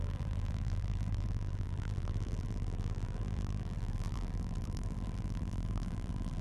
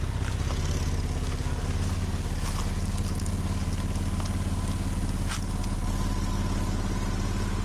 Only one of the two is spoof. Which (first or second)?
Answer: first